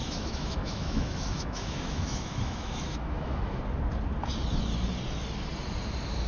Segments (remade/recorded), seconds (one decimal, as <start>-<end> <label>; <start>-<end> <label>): 0.0-3.6 remade; 3.6-6.3 recorded